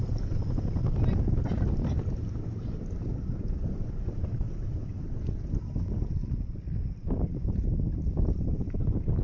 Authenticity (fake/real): real